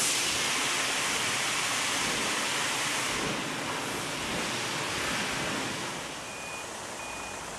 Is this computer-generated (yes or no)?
no